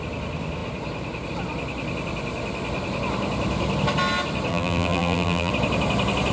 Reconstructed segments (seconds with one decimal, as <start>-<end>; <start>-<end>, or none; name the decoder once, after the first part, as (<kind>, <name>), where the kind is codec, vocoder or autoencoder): 4.5-5.5 (vocoder, BigVGAN v2)